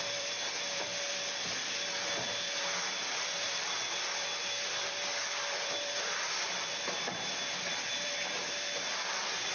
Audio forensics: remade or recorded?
remade